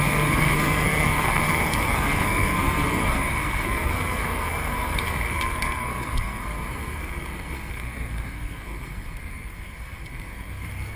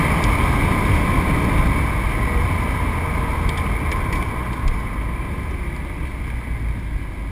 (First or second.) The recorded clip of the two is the second